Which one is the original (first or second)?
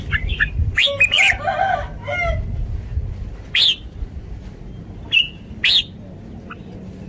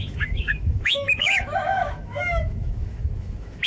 first